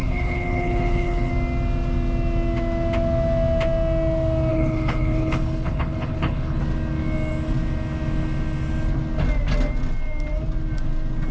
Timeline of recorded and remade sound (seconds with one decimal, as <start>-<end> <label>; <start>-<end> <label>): 0.0-1.3 remade; 1.3-4.5 recorded; 4.5-6.6 remade; 6.6-11.3 recorded